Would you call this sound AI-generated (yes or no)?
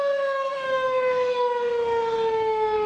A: yes